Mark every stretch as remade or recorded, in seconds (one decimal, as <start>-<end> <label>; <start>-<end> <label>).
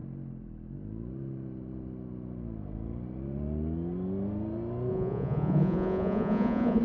0.0-4.9 recorded; 4.9-6.8 remade